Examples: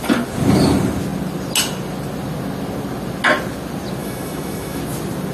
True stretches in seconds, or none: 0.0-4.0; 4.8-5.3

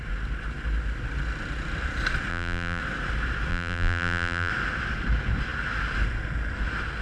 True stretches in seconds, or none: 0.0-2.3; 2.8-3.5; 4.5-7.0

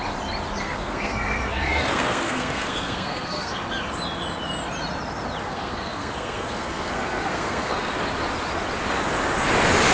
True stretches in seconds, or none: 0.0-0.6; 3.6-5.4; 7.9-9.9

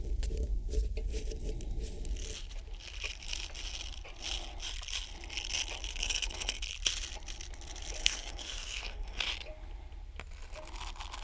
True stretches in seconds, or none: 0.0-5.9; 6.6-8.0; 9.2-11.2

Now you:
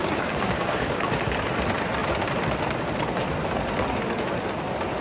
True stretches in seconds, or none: 1.2-5.0